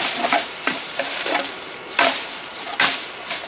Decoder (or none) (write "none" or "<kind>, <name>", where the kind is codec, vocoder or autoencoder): vocoder, BigVGAN v2